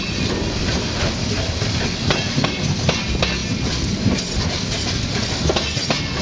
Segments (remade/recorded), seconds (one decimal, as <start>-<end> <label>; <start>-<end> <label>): 0.0-6.2 recorded